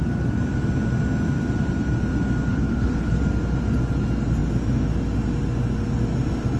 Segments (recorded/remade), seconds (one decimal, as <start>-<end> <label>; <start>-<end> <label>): 0.0-2.5 recorded; 2.5-3.2 remade; 3.2-6.6 recorded